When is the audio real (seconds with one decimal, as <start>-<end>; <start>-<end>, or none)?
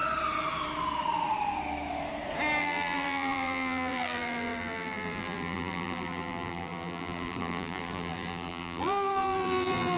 0.0-2.6